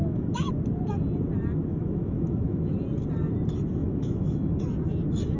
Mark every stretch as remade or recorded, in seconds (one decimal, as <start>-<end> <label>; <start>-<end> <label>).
0.0-0.5 remade; 0.5-1.7 recorded; 1.7-2.7 remade; 2.7-3.8 recorded; 3.8-4.6 remade; 4.6-5.4 recorded